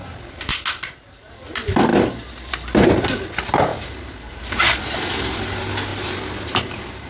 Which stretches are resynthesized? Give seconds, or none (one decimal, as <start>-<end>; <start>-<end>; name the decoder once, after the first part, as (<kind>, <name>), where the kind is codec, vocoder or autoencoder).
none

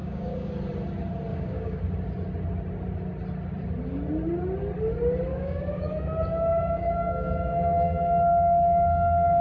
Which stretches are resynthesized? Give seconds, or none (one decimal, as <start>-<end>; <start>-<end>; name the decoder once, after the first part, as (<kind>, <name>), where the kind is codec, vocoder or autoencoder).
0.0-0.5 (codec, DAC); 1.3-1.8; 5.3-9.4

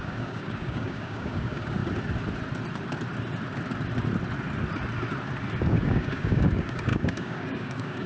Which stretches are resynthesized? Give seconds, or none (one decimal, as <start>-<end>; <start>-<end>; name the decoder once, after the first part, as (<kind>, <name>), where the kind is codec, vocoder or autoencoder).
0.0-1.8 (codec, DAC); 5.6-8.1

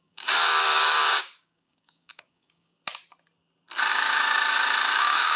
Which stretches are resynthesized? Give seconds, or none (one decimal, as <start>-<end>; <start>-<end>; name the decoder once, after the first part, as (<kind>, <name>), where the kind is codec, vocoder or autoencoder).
0.0-2.8 (codec, DAC); 3.9-5.4